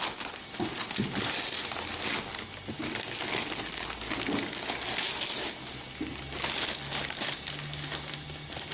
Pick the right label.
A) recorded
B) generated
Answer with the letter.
A